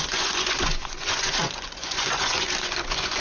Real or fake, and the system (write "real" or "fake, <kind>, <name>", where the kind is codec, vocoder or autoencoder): fake, vocoder, Vocos